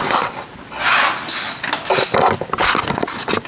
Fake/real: real